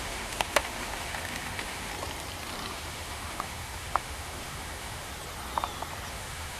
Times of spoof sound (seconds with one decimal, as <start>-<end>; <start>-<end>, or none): 0.0-1.9; 2.7-5.1; 6.1-6.6